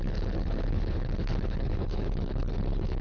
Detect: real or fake fake